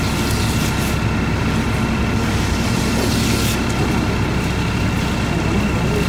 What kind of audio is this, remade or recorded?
recorded